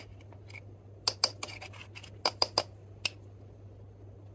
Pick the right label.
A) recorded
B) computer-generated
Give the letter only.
A